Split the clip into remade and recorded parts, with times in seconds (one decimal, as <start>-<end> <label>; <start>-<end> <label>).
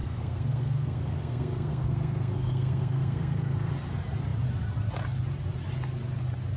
0.0-3.7 remade; 3.7-6.6 recorded